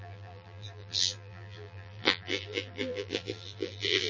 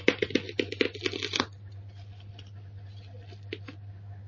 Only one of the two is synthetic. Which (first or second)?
first